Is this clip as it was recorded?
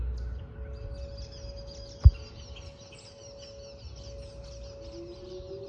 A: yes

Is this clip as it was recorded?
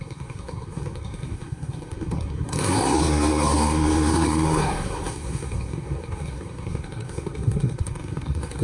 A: no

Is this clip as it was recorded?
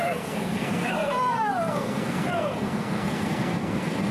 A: no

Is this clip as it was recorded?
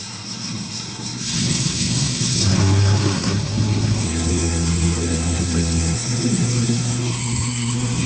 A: no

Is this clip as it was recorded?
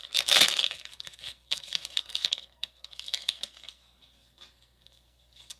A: no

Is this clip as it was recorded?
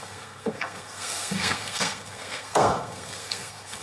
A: no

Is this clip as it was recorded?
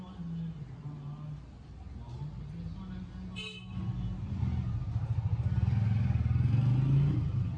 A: yes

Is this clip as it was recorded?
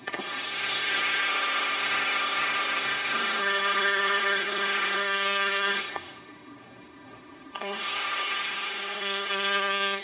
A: no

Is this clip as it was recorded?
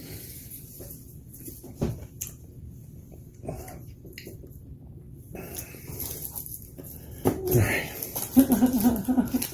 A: yes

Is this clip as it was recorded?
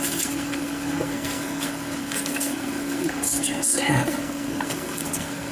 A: no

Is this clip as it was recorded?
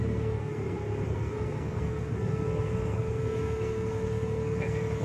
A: no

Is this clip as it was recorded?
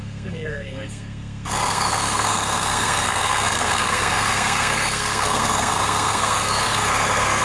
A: no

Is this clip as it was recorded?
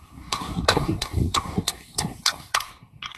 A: no